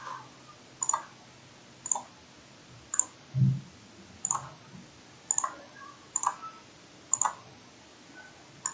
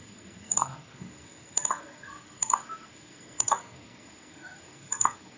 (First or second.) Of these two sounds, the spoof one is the second